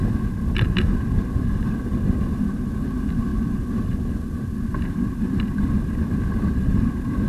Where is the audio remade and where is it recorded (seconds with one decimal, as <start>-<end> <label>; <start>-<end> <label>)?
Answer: 0.0-7.3 recorded